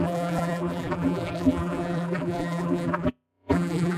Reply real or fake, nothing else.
fake